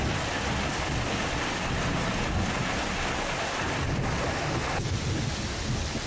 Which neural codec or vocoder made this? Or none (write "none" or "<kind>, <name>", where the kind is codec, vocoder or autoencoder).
none